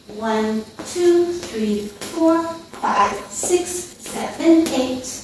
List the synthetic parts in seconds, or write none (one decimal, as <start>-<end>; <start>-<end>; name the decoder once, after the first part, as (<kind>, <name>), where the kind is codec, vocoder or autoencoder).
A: 1.7-2.2 (codec, HILCodec); 2.7-3.3; 3.9-4.4

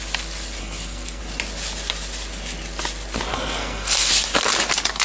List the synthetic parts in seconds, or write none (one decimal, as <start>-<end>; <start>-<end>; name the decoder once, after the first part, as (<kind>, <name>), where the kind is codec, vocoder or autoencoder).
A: 0.6-1.2 (codec, SNAC); 3.3-4.1